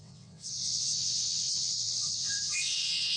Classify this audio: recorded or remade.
remade